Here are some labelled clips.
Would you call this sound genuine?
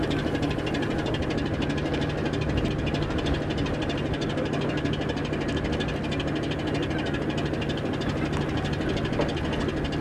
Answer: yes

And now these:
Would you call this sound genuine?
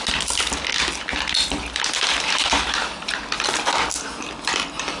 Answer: yes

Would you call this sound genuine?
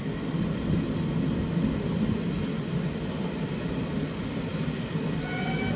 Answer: yes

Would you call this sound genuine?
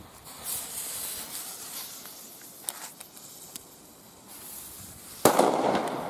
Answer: yes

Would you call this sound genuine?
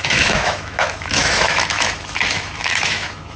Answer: no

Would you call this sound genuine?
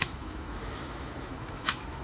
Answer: no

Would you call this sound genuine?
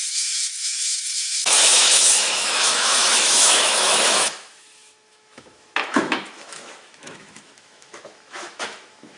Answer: no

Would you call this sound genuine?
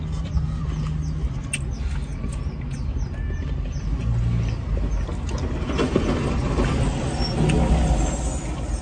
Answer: yes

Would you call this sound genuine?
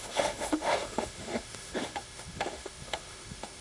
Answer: no